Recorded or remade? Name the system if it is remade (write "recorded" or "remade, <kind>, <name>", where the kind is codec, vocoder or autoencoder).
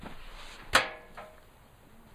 recorded